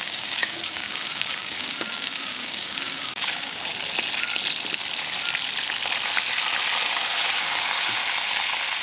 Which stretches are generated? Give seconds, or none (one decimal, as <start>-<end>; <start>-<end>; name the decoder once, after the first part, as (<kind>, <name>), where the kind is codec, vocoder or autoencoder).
0.0-3.7 (codec, DAC); 7.2-8.0